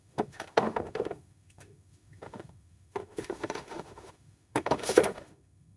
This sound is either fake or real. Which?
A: fake